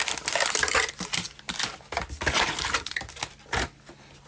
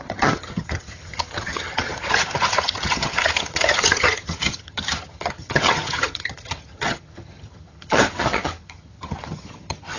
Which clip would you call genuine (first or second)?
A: first